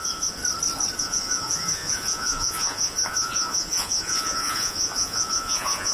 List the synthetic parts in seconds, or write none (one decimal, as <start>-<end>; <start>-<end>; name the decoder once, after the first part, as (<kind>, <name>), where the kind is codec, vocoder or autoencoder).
0.0-0.4 (vocoder, Vocos); 1.0-5.9